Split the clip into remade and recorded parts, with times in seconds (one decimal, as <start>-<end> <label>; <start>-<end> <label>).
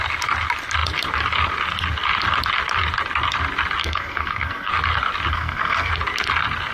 0.0-3.8 recorded; 3.8-4.7 remade; 4.7-5.3 recorded; 5.3-5.9 remade; 5.9-6.7 recorded